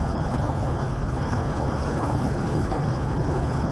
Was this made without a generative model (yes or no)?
no